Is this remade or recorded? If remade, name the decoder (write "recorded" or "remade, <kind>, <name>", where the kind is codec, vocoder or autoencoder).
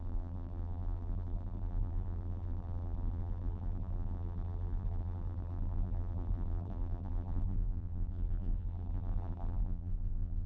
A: remade, vocoder, BigVGAN v2